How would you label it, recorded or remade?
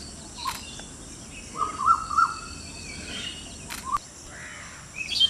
recorded